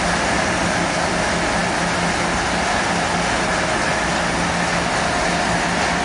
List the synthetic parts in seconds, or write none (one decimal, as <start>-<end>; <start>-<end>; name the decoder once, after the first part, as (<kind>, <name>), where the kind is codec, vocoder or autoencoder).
none